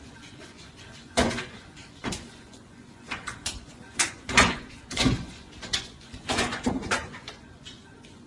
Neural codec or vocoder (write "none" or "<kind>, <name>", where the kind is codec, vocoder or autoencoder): vocoder, Vocos